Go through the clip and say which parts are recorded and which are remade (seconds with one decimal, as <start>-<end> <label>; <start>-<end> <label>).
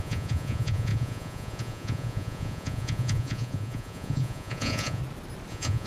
0.0-5.0 remade; 5.0-5.5 recorded; 5.5-5.9 remade